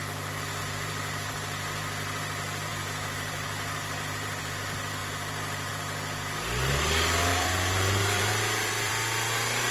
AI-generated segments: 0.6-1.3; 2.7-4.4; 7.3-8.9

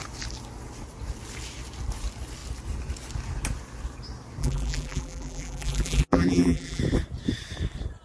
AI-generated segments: 4.4-6.8

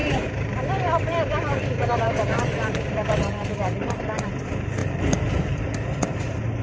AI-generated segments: 0.0-4.0; 4.8-6.0

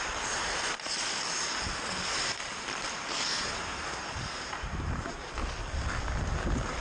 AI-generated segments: 3.8-5.3

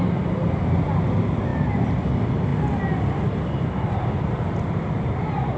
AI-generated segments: 0.0-2.5; 4.6-5.6

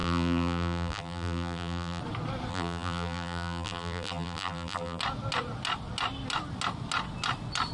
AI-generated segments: 0.0-2.0; 2.5-5.0